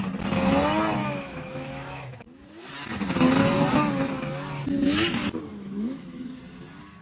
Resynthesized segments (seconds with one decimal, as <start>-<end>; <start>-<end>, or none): 1.0-2.7; 5.5-6.4